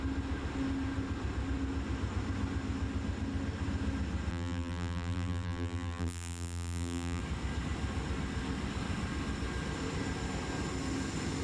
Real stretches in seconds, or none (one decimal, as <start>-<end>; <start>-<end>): 0.0-4.3; 7.2-11.4